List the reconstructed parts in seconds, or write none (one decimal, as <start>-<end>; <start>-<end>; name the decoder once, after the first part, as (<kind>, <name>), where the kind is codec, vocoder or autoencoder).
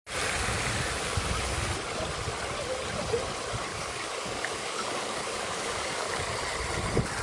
3.7-6.3 (codec, DAC)